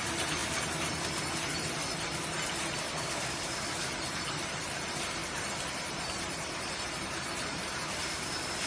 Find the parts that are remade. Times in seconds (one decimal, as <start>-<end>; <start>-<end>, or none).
none